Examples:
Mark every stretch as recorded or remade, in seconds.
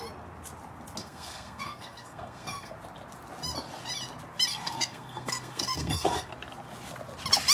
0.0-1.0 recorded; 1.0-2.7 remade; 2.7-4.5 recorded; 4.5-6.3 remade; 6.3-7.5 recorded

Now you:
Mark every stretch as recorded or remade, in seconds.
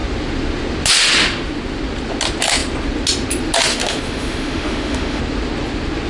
0.0-3.7 recorded; 3.7-5.2 remade; 5.2-6.1 recorded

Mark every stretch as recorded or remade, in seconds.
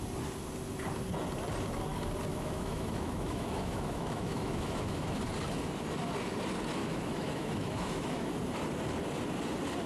0.0-2.3 recorded; 2.3-5.2 remade; 5.2-6.8 recorded; 6.8-8.3 remade; 8.3-9.9 recorded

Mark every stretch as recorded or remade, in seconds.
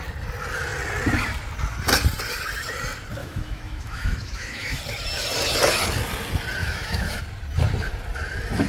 0.0-3.2 recorded; 3.2-4.8 remade; 4.8-6.6 recorded; 6.6-7.2 remade; 7.2-8.7 recorded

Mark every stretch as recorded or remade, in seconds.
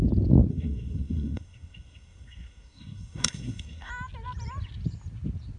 0.0-0.5 recorded; 0.5-3.9 remade; 3.9-5.6 recorded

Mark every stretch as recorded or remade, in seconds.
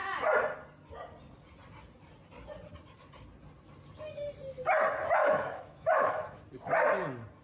0.0-5.2 recorded; 5.2-6.4 remade; 6.4-7.4 recorded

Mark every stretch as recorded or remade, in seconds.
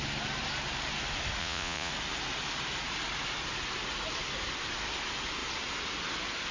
0.0-1.4 recorded; 1.4-1.9 remade; 1.9-6.5 recorded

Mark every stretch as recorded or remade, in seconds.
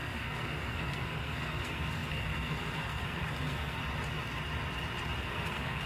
0.0-3.8 remade; 3.8-5.2 recorded; 5.2-5.9 remade